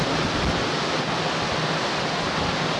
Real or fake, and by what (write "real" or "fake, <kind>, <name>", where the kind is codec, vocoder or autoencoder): real